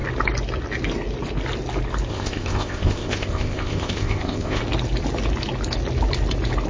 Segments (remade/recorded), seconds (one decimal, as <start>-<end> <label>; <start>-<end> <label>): 0.0-2.1 recorded; 2.1-4.6 remade; 4.6-6.7 recorded